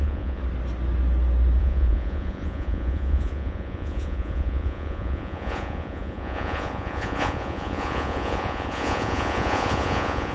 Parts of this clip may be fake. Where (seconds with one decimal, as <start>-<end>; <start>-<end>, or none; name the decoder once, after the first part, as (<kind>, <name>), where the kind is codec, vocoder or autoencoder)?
0.0-0.4 (vocoder, Vocos); 1.6-10.3